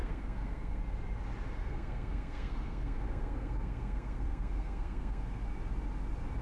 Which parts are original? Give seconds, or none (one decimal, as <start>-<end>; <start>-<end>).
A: 0.8-1.6; 5.4-6.4